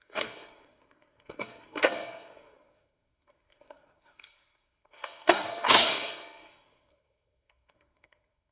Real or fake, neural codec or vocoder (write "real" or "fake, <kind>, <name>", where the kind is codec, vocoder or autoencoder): fake, codec, SNAC